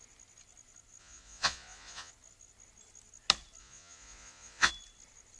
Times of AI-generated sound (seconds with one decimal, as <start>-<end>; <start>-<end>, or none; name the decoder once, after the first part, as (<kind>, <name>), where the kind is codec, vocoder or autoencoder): 1.0-2.1 (vocoder, Vocos); 3.6-4.7